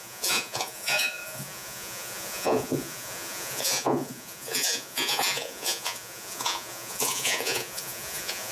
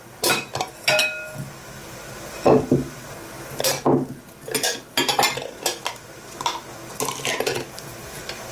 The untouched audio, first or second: second